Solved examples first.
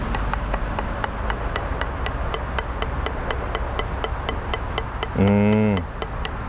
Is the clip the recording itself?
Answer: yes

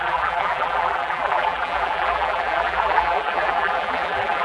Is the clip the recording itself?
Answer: no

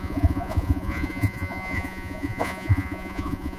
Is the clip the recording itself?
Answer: no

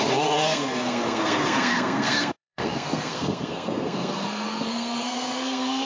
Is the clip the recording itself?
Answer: no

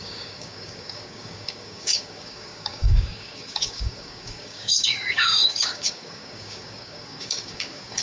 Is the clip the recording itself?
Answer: no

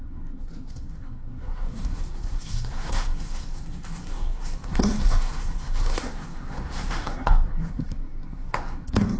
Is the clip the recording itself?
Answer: no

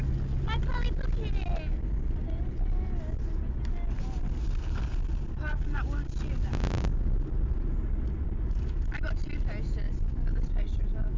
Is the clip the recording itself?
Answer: yes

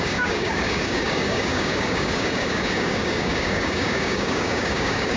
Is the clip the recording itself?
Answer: no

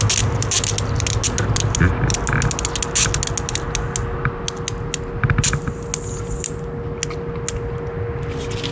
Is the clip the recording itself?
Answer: yes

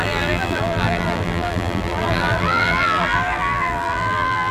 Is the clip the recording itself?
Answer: no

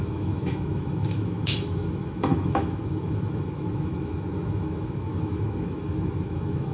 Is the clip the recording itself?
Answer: no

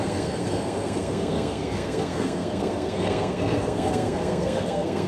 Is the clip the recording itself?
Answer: no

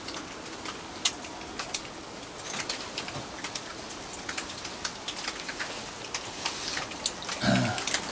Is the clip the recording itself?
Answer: yes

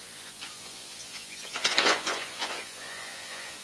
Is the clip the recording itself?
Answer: no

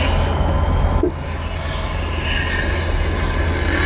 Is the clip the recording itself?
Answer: yes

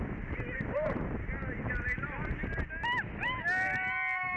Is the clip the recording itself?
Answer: yes